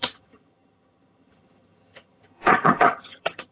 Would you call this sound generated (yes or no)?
yes